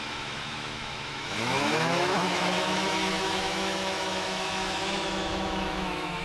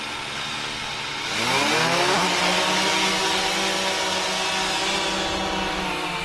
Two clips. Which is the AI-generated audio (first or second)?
first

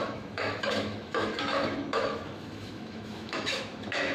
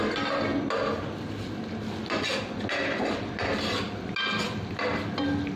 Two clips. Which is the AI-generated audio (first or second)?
first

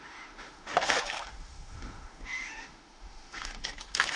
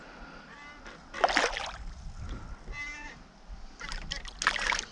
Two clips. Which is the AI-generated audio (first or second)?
first